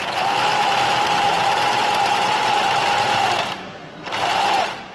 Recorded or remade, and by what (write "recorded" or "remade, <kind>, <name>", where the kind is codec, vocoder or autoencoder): recorded